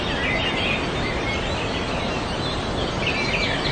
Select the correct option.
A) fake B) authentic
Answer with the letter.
B